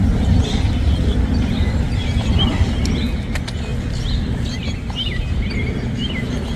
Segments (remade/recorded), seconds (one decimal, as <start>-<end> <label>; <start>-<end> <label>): 0.0-6.6 recorded